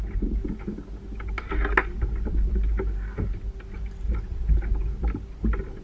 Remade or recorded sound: recorded